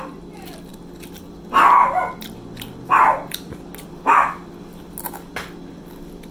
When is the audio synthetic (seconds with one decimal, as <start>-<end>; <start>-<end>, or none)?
none